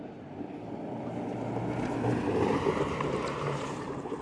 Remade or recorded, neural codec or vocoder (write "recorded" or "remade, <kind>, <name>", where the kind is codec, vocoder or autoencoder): remade, vocoder, BigVGAN v2